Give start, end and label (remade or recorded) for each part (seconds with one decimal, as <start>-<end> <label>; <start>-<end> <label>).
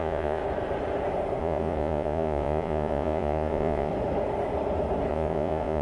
0.0-0.4 remade; 0.4-1.4 recorded; 1.4-3.9 remade; 3.9-5.1 recorded; 5.1-5.8 remade